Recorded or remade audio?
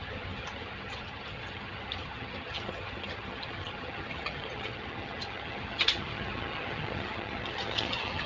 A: remade